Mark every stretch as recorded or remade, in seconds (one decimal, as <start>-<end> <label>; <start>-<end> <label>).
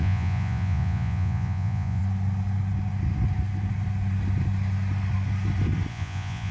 0.0-2.0 remade; 2.0-5.9 recorded; 5.9-6.5 remade